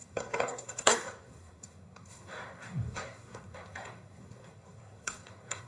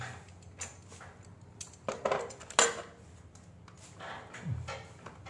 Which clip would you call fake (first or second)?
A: first